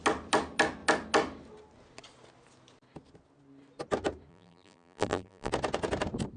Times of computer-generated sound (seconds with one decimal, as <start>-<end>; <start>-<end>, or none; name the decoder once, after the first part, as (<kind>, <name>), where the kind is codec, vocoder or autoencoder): 4.3-5.5 (vocoder, BigVGAN v2)